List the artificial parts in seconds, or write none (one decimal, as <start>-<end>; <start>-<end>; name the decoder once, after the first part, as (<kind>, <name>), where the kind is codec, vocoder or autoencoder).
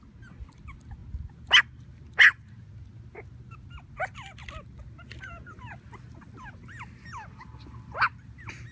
none